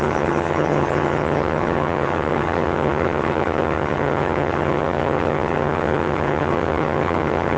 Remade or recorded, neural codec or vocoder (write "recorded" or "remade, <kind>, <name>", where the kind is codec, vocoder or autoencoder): remade, vocoder, HiFi-GAN